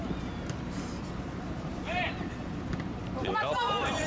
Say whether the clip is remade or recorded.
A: remade